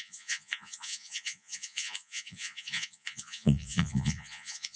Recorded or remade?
remade